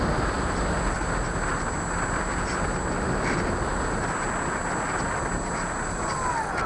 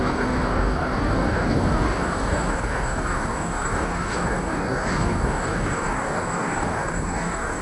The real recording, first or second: first